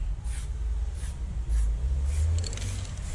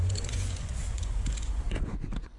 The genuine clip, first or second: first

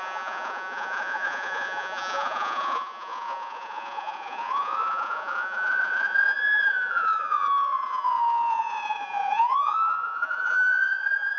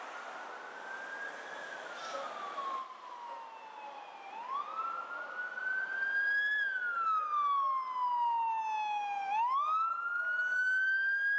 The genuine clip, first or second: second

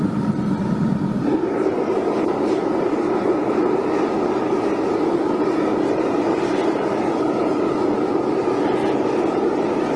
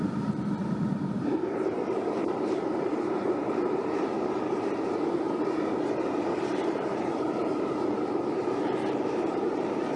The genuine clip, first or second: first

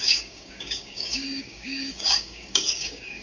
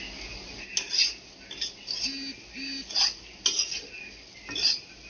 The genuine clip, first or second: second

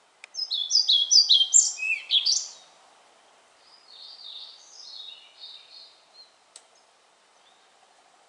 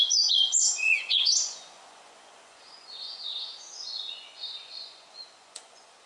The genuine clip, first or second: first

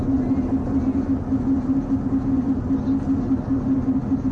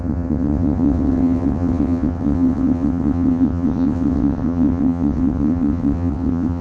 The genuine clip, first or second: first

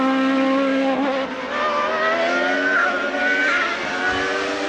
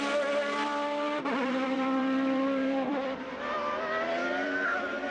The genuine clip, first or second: first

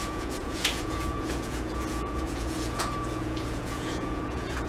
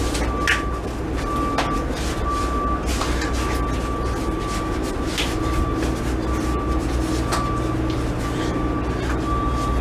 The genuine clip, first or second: second